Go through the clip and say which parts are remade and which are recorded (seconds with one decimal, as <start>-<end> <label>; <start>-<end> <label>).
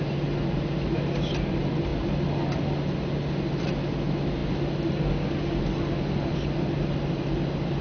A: 0.0-7.8 recorded